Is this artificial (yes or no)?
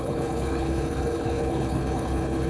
yes